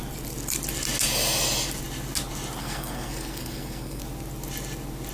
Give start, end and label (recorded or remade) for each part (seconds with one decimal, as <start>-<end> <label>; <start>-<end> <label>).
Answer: 0.0-2.6 recorded; 2.6-4.0 remade; 4.0-5.1 recorded